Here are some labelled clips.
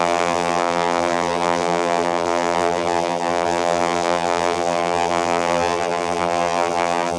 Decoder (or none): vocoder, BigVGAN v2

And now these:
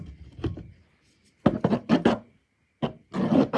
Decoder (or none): none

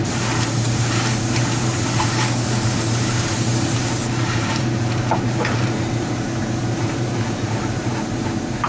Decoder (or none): vocoder, BigVGAN v2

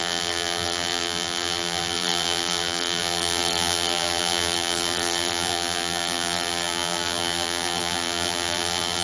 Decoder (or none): vocoder, BigVGAN v2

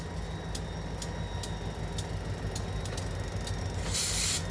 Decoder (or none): none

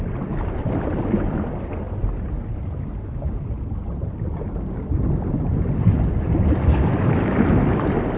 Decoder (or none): none